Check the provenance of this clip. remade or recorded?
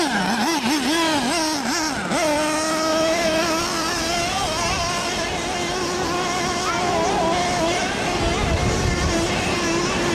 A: recorded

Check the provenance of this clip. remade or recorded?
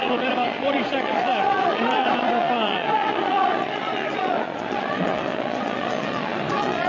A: remade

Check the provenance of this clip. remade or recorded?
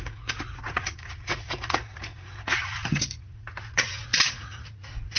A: remade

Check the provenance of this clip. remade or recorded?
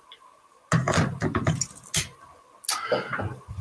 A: recorded